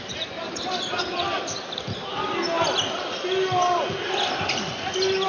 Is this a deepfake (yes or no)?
no